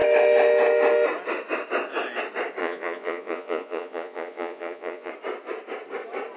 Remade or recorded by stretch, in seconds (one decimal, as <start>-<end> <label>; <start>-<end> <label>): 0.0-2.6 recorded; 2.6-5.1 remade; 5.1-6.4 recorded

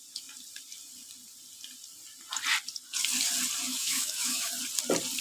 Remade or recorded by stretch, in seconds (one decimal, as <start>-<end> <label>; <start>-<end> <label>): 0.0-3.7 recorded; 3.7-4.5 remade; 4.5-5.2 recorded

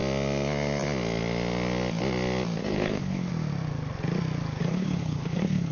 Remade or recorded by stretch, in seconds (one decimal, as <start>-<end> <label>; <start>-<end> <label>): 0.0-2.6 recorded; 2.6-3.3 remade; 3.3-4.6 recorded; 4.6-5.7 remade

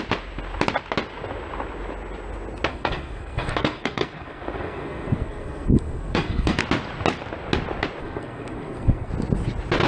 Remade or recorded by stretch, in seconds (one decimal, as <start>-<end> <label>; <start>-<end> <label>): 0.0-2.7 recorded; 2.7-6.6 remade; 6.6-8.0 recorded; 8.0-9.1 remade; 9.1-9.9 recorded